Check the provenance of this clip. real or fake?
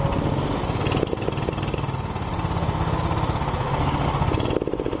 real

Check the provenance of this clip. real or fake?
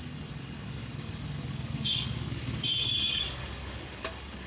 fake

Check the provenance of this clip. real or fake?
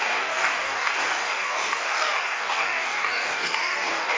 fake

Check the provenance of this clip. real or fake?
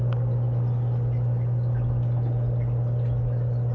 real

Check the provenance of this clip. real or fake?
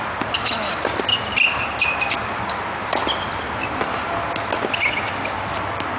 real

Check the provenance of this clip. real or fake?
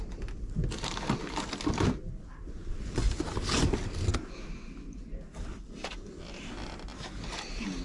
real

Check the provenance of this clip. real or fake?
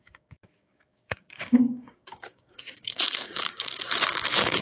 fake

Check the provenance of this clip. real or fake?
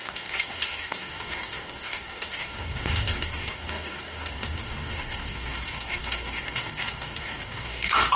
fake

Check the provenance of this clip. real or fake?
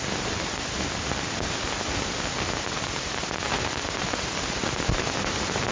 real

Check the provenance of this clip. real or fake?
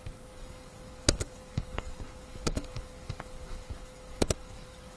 fake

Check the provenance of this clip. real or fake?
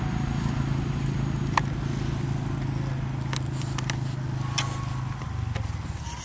real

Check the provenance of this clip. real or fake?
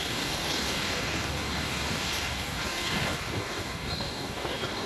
fake